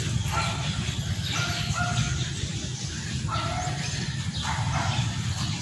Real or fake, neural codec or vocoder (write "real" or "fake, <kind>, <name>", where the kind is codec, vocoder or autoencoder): real